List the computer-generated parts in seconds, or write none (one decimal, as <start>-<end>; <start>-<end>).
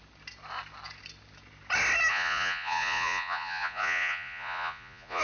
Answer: 2.1-5.2